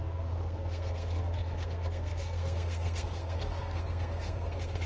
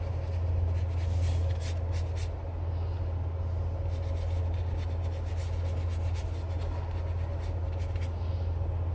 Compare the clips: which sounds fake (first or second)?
first